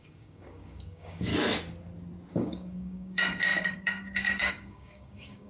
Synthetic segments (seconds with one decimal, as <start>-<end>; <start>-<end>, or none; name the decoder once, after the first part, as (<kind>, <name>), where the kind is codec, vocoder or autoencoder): 0.0-1.3 (codec, DAC); 2.3-5.5